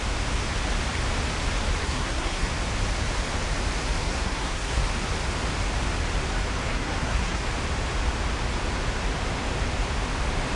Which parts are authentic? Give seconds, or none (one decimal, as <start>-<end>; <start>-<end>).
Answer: 0.0-1.8; 2.5-4.0; 4.8-6.7; 7.4-10.5